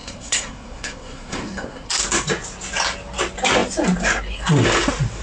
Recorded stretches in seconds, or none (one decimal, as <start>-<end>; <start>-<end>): 1.9-5.2